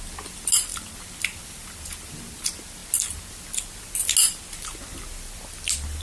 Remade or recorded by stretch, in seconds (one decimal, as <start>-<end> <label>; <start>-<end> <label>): 0.0-6.0 recorded